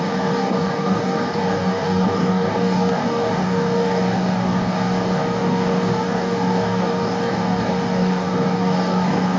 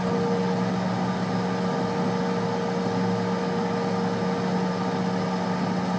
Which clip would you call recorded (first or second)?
second